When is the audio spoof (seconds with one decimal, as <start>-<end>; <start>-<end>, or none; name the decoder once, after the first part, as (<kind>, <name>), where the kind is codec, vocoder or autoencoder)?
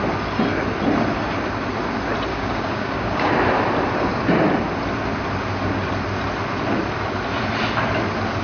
2.3-3.3 (codec, DAC)